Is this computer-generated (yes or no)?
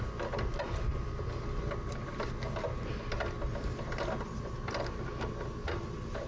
no